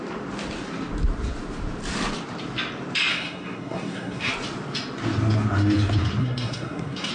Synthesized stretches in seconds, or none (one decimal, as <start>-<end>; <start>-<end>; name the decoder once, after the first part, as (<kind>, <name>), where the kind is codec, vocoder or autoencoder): 3.1-4.3 (codec, SNAC); 6.2-7.1